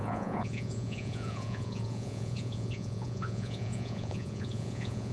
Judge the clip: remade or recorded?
remade